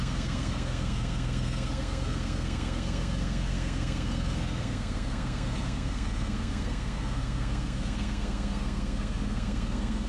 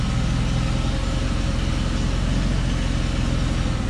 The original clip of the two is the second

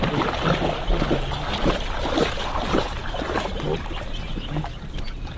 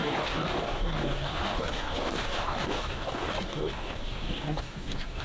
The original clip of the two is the first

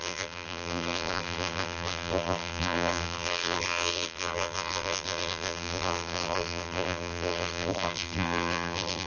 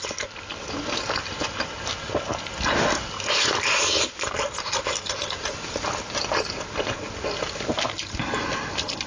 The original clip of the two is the second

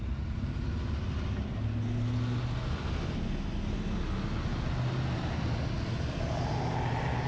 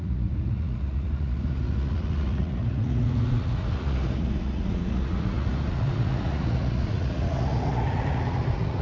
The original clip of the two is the first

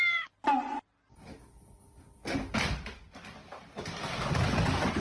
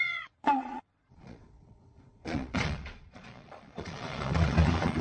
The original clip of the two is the first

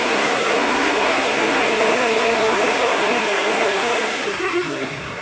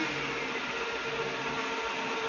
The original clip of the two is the second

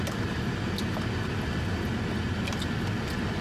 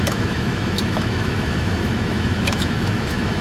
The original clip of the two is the first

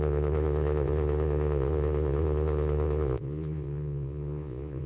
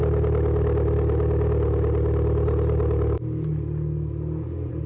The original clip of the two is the second